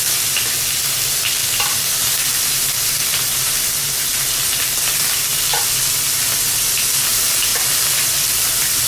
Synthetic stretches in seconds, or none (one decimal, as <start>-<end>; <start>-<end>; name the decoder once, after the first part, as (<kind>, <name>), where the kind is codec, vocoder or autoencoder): 7.5-8.9 (vocoder, BigVGAN v2)